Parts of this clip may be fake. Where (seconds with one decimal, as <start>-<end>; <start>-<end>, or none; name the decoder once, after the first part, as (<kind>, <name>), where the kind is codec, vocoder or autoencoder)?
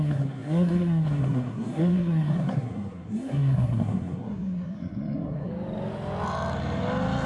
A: 0.0-5.5 (codec, SNAC)